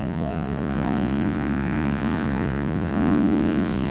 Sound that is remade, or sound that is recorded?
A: remade